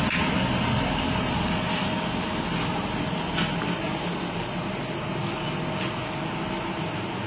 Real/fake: real